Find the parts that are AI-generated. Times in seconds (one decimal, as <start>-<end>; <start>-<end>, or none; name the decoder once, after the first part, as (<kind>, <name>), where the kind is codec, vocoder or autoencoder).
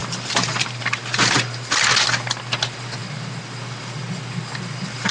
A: none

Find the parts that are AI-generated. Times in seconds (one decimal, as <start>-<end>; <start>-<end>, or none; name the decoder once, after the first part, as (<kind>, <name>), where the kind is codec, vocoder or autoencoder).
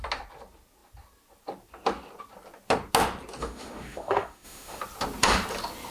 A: 3.4-4.8 (autoencoder, DAC-VAE)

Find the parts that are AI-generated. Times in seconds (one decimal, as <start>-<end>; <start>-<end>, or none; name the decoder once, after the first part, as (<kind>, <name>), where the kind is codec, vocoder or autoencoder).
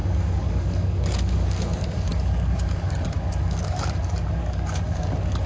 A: 0.0-5.5 (codec, DAC)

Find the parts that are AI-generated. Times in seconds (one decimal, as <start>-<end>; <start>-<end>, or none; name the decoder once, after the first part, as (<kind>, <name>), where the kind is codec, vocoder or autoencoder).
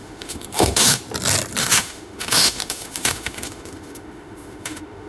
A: 0.0-1.0 (autoencoder, DAC-VAE); 1.6-5.1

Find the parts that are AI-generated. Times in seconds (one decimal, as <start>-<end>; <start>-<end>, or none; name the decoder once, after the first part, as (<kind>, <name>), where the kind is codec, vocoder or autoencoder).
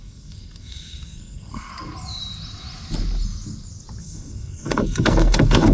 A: 0.0-1.7 (codec, SNAC); 4.0-5.7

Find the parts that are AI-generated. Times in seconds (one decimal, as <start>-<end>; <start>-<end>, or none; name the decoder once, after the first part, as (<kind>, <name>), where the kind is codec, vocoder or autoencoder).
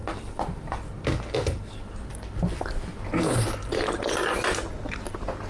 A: none